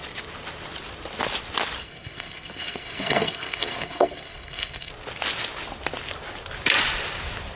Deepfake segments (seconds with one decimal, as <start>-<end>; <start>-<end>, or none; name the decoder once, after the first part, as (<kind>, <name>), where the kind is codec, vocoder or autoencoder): 1.8-4.9 (codec, SNAC)